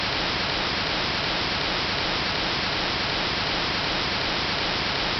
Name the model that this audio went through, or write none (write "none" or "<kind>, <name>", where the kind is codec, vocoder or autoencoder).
vocoder, BigVGAN v2